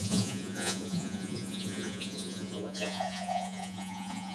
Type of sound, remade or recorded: remade